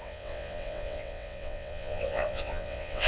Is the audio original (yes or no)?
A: no